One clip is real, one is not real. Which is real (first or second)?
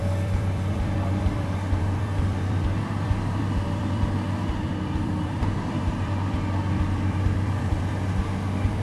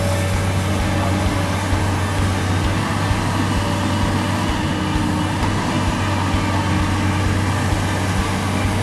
second